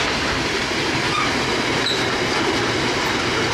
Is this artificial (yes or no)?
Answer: no